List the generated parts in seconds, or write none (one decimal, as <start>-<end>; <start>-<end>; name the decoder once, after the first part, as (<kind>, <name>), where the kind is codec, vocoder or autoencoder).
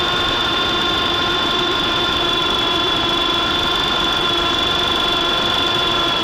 0.0-6.2 (vocoder, BigVGAN v2)